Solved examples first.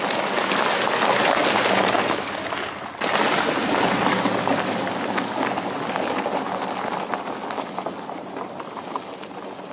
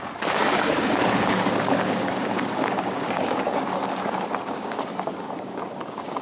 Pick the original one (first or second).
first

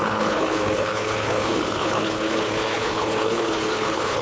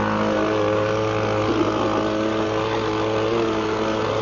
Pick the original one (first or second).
second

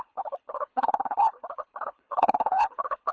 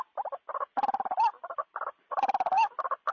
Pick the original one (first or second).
second